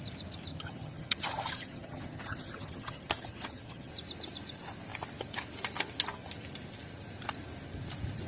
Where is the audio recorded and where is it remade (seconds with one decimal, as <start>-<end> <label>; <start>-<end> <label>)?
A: 0.0-0.5 recorded; 0.5-3.9 remade; 3.9-8.3 recorded